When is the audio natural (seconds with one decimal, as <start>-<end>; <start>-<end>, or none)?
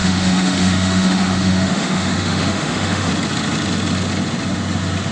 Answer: 3.1-5.1